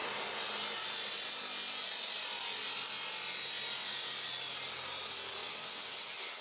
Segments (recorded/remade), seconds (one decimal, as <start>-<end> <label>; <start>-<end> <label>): 0.0-5.4 recorded; 5.4-6.4 remade